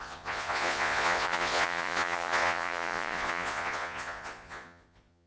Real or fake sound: fake